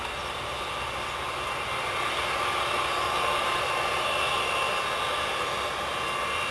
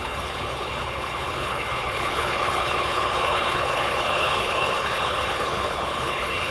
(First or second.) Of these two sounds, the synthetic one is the second